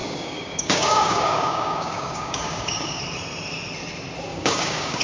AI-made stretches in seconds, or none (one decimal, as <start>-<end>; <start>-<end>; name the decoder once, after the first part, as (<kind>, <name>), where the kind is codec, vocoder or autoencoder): 0.0-3.0 (codec, DAC); 4.3-5.0